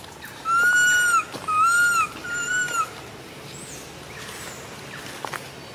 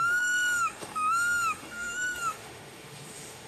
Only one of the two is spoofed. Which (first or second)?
second